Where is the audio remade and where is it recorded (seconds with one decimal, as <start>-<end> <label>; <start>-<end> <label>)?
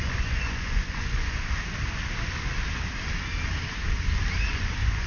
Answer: 0.0-1.4 remade; 1.4-4.5 recorded; 4.5-5.1 remade